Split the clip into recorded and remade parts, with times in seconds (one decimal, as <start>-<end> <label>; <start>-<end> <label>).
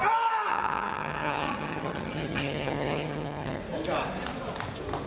0.0-0.5 recorded; 0.5-3.6 remade; 3.6-5.1 recorded